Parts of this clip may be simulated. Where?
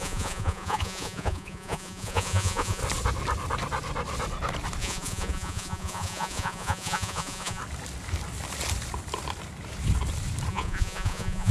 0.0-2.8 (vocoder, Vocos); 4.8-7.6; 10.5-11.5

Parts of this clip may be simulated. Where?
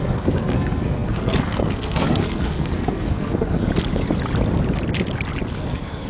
0.0-3.7 (codec, SNAC); 5.5-6.1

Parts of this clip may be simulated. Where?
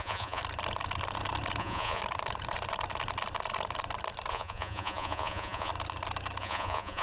0.0-0.4 (vocoder, Vocos); 1.6-2.0; 4.3-5.7; 6.4-7.0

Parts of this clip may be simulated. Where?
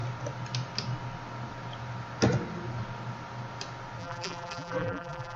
4.0-5.4 (vocoder, BigVGAN v2)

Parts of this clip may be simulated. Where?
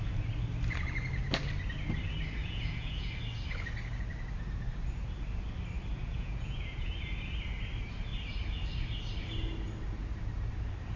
2.4-3.1 (vocoder, Vocos); 5.9-6.9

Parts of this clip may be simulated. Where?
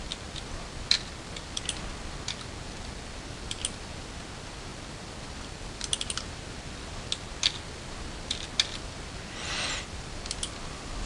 none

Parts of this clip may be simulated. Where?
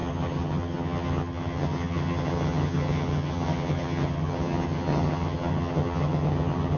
0.0-6.8 (vocoder, HiFi-GAN)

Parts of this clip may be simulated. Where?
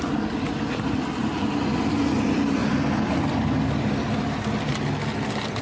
none